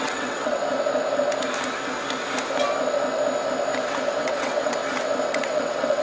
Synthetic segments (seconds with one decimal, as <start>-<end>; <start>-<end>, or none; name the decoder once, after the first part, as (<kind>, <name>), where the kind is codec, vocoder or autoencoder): 0.0-0.6 (vocoder, WaveNeXt); 4.2-4.8; 5.3-6.0